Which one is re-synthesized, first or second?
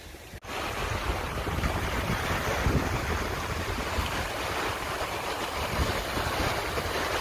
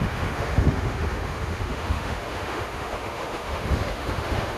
second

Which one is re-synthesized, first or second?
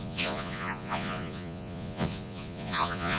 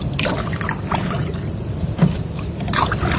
first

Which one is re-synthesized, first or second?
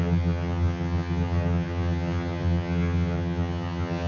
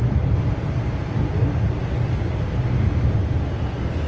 first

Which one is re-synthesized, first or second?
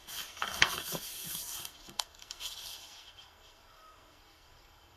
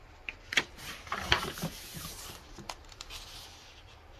first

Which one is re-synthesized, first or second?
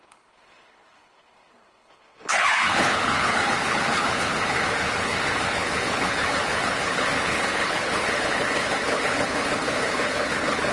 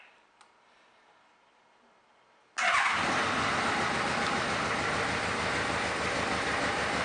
first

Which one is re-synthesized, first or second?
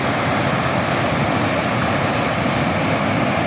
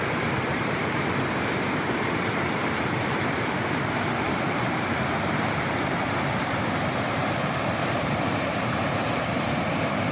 second